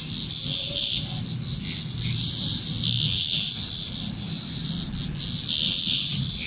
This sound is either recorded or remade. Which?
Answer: recorded